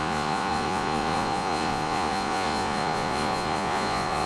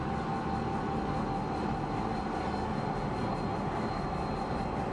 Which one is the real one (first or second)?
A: second